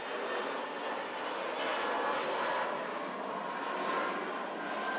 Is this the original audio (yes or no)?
yes